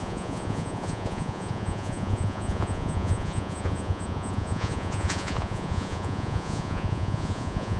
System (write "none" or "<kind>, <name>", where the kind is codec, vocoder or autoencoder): vocoder, Vocos